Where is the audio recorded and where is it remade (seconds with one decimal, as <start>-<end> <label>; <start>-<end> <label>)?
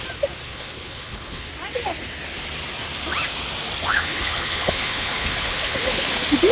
0.0-0.4 recorded; 0.4-1.5 remade; 1.5-3.9 recorded; 3.9-6.1 remade; 6.1-6.5 recorded